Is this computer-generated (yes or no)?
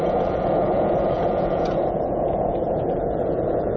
yes